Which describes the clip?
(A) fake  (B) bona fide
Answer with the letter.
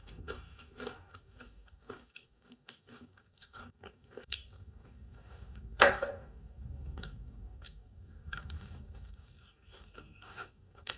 A